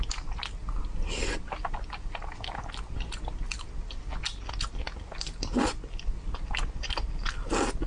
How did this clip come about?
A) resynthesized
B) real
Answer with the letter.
B